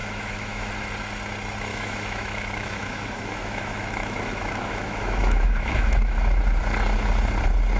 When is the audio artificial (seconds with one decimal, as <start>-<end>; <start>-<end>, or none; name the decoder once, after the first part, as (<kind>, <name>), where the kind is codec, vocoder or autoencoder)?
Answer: 0.0-0.7 (autoencoder, DAC-VAE); 1.7-6.4